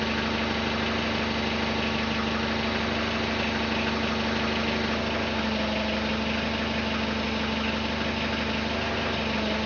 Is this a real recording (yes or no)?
yes